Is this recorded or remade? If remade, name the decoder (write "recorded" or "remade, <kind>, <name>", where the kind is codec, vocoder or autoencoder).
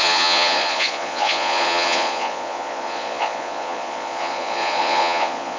remade, vocoder, Vocos